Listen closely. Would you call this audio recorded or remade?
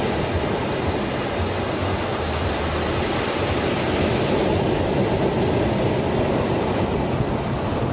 recorded